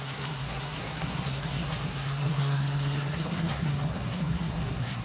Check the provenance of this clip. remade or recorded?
remade